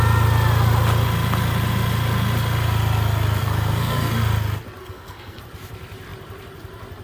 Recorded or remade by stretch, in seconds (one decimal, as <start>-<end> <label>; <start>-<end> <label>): 0.0-3.4 recorded; 3.4-4.1 remade; 4.1-4.8 recorded; 4.8-5.4 remade; 5.4-7.0 recorded